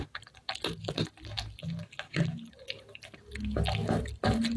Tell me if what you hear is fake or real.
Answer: real